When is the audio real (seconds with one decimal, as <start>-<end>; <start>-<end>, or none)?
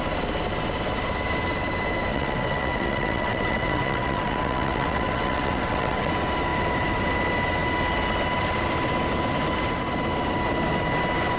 0.0-2.1; 6.1-11.4